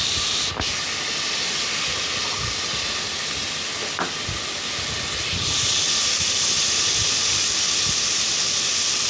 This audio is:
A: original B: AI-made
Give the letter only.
A